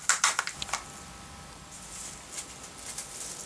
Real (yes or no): yes